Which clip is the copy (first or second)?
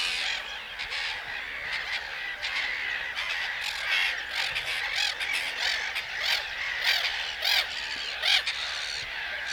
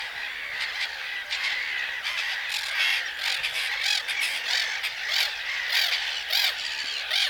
second